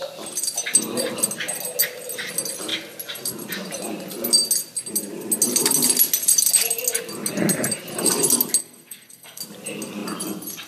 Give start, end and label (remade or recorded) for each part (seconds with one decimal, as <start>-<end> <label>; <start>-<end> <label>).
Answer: 0.0-8.6 recorded; 8.6-9.4 remade; 9.4-10.7 recorded